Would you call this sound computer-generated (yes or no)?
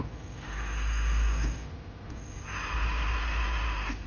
no